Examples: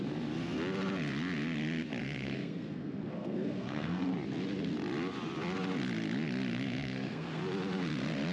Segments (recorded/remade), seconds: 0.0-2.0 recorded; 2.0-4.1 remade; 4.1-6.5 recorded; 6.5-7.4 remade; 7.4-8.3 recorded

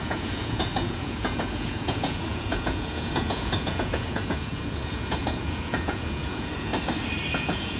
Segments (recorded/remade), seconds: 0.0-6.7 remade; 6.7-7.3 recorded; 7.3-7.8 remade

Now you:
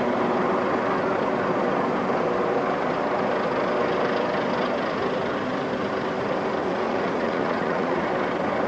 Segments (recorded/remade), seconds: 0.0-6.6 recorded; 6.6-8.1 remade; 8.1-8.7 recorded